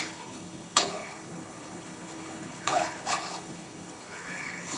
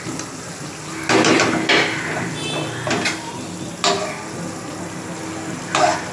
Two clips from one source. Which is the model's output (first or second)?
first